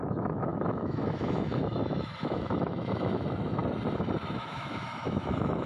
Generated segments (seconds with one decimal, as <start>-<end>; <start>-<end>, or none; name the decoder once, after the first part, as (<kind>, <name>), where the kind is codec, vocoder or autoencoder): 0.0-3.6 (autoencoder, DAC-VAE); 4.3-5.7